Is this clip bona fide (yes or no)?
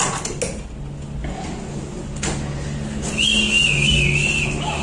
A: yes